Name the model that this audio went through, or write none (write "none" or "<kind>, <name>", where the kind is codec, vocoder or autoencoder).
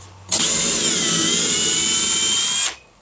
none